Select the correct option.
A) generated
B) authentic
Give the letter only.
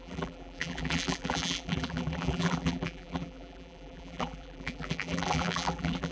A